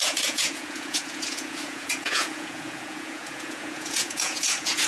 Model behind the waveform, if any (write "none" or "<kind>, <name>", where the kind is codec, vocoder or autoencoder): vocoder, Vocos